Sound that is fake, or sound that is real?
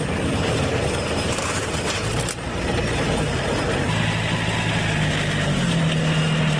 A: real